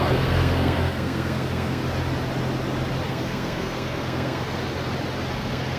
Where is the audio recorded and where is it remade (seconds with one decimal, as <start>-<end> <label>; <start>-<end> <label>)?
0.0-1.8 remade; 1.8-3.1 recorded; 3.1-4.6 remade; 4.6-5.3 recorded; 5.3-5.8 remade